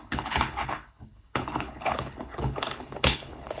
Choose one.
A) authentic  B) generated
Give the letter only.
B